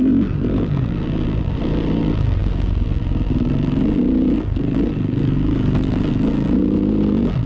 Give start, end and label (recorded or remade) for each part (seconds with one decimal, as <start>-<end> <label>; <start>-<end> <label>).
0.0-7.5 remade